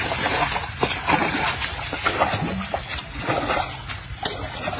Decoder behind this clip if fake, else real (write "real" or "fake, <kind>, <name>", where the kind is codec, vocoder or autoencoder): real